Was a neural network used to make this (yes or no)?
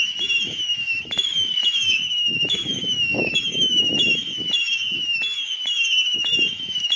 yes